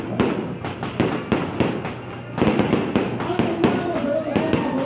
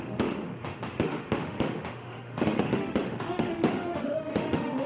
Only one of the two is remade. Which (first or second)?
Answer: second